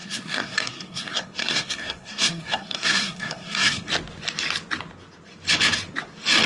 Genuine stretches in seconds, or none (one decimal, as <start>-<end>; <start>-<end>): 3.9-6.5